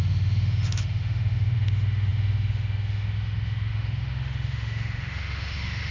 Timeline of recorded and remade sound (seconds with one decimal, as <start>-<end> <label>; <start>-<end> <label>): 0.0-5.9 remade